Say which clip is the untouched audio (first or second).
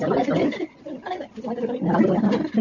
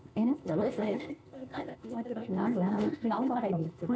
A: first